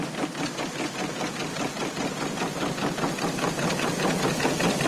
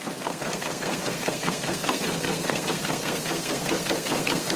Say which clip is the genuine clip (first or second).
first